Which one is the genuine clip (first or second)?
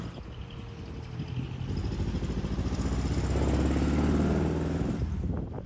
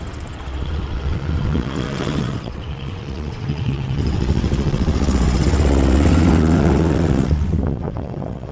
first